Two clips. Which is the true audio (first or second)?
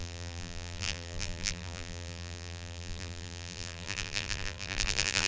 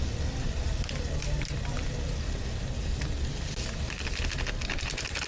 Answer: second